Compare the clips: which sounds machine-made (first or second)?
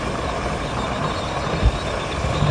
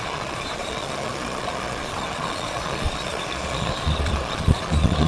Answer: second